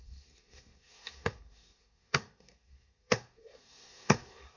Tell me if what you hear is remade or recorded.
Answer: remade